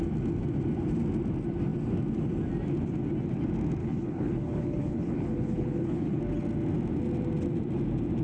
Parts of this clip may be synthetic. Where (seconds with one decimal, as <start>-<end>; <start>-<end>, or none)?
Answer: 3.8-6.2